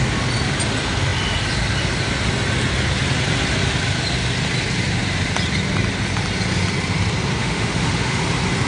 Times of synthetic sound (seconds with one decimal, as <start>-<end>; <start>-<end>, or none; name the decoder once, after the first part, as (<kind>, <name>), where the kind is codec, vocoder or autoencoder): 7.4-8.2 (autoencoder, DAC-VAE)